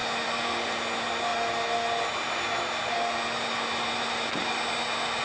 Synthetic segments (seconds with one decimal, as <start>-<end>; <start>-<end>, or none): none